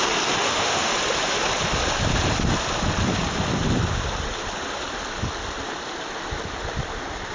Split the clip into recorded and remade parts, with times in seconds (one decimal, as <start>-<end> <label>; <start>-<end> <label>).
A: 0.0-0.4 recorded; 0.4-0.9 remade; 0.9-7.3 recorded